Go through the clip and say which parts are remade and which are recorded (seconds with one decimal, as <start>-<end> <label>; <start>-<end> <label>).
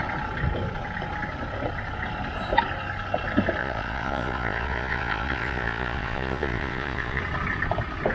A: 0.0-3.6 recorded; 3.6-7.2 remade; 7.2-8.1 recorded